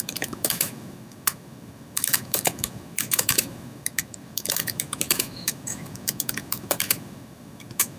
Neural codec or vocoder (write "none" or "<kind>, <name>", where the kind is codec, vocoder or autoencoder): autoencoder, DAC-VAE